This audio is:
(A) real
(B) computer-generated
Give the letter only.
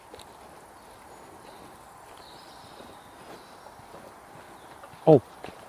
A